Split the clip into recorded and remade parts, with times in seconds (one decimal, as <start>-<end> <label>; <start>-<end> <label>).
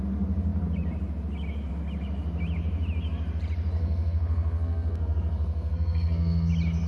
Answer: 0.0-3.8 recorded; 3.8-6.5 remade; 6.5-6.9 recorded